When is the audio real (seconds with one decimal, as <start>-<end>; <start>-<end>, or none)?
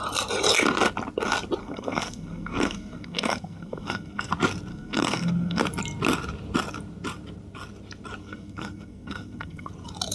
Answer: 0.0-1.6; 4.3-4.7; 5.6-8.2; 9.7-10.1